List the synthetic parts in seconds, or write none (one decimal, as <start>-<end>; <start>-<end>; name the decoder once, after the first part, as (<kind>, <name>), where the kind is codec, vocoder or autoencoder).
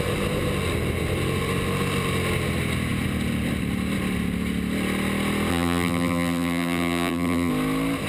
5.5-7.5 (vocoder, BigVGAN v2)